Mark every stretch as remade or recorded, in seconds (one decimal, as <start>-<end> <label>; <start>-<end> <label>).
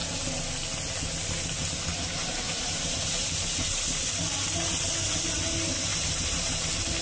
0.0-1.9 recorded; 1.9-4.2 remade; 4.2-5.9 recorded; 5.9-6.5 remade; 6.5-7.0 recorded